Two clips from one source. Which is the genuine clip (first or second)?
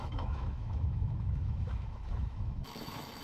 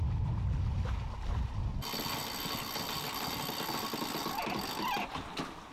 second